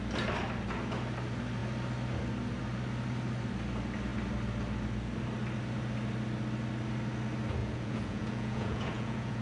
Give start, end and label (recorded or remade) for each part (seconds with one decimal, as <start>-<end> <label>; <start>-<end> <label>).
0.0-7.6 recorded; 7.6-9.4 remade